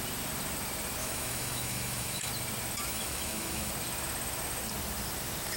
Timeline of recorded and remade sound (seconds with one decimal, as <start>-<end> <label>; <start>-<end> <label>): 0.0-1.0 recorded; 1.0-2.3 remade; 2.3-2.9 recorded; 2.9-3.7 remade; 3.7-5.6 recorded